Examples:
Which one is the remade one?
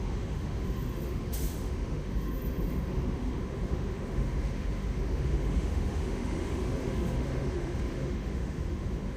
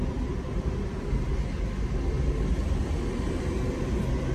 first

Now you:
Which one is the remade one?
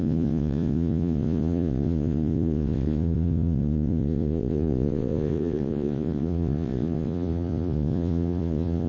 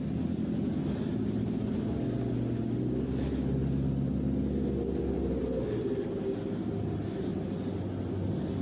first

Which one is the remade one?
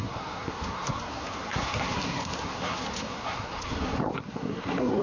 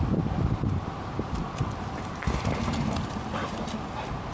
first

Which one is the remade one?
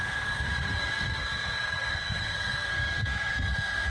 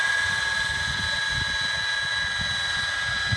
first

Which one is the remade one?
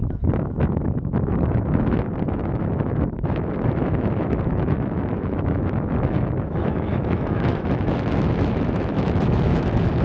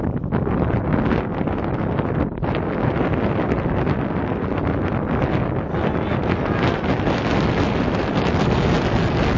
first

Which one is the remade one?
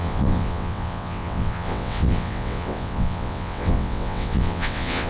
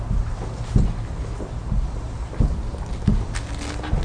first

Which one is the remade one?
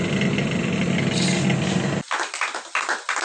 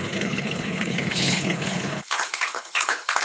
second